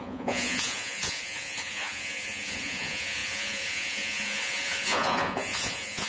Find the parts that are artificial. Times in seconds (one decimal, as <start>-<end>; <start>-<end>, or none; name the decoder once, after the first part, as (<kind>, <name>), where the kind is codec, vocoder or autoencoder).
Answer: 0.0-6.1 (vocoder, Vocos)